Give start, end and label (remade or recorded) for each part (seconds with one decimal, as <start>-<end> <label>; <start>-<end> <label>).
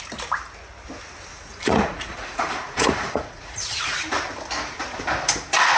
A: 0.0-1.3 recorded; 1.3-4.0 remade; 4.0-5.8 recorded